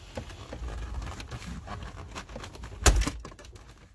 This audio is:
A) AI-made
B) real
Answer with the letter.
B